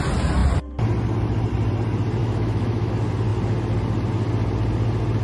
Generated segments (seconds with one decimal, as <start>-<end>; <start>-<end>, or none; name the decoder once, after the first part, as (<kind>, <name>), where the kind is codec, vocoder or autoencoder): 2.2-2.9 (autoencoder, DAC-VAE)